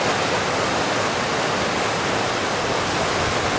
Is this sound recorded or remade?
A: recorded